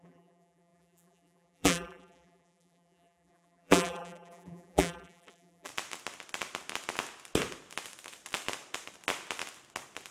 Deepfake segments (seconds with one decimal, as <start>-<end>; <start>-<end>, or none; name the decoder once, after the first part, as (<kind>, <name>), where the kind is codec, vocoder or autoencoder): 0.0-5.7 (vocoder, BigVGAN v2)